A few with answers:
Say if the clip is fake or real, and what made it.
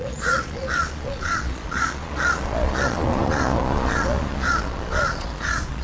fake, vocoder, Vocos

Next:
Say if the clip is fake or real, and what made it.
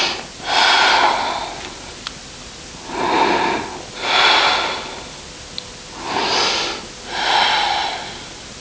real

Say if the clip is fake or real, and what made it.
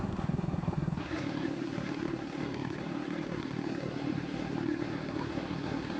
fake, codec, SNAC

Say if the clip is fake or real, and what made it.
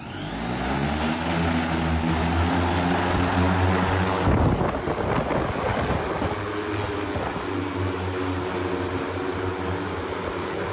real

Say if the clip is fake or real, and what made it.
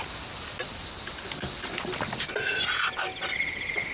real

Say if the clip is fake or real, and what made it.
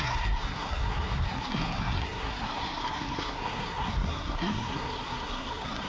fake, codec, SNAC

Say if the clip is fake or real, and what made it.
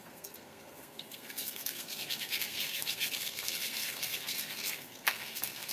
fake, codec, SNAC